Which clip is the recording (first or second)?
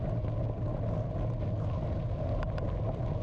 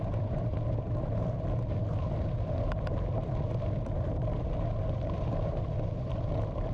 first